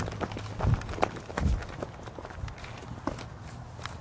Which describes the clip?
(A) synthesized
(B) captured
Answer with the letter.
B